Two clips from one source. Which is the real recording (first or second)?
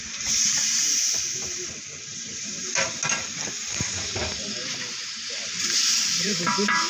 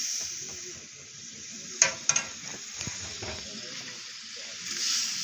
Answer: second